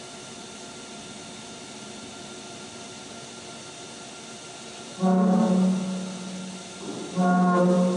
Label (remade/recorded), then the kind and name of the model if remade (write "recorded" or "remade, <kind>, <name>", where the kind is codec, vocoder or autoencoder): recorded